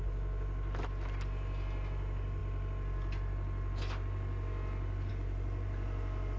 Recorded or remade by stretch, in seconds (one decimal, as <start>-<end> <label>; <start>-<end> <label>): 0.0-6.4 recorded